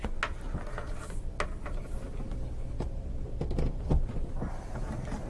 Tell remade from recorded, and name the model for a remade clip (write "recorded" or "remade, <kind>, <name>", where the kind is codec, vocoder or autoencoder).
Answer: recorded